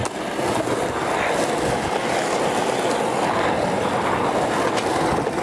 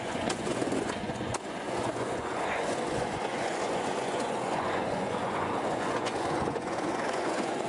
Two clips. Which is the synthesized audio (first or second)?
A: second